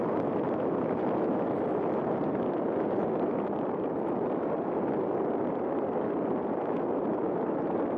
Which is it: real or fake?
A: real